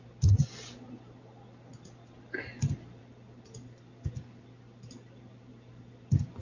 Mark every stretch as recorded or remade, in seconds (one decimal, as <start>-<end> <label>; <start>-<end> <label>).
0.0-6.4 recorded